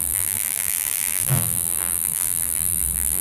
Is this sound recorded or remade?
remade